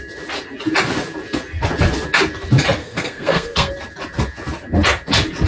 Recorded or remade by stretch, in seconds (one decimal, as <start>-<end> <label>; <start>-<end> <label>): 0.0-2.8 recorded; 2.8-3.7 remade; 3.7-5.5 recorded